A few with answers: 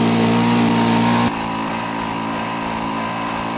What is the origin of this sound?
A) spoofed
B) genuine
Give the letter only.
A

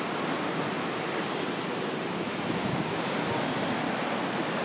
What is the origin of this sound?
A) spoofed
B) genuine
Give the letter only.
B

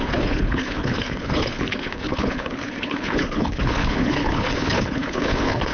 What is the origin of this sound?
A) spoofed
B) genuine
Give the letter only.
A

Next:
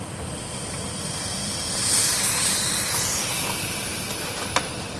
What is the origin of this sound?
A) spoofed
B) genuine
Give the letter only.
B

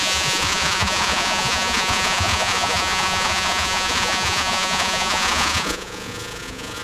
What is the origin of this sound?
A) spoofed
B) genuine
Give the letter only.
A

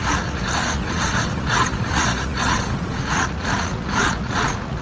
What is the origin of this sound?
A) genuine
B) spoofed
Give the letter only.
B